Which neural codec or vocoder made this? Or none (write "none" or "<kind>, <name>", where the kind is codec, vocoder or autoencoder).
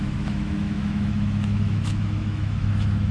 autoencoder, DAC-VAE